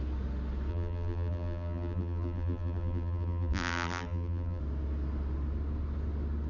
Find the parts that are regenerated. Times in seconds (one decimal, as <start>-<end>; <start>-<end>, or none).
0.7-4.6